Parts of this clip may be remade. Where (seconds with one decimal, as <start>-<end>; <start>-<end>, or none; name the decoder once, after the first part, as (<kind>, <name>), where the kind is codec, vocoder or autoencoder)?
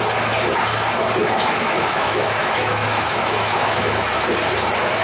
1.2-4.2 (autoencoder, DAC-VAE)